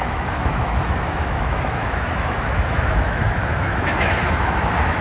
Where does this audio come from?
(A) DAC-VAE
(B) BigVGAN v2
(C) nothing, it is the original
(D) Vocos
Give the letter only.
A